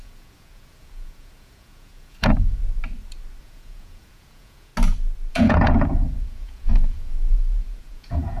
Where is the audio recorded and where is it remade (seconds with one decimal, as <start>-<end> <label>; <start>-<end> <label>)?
0.0-2.6 remade; 2.6-3.4 recorded; 3.4-4.7 remade; 4.7-5.3 recorded; 5.3-8.4 remade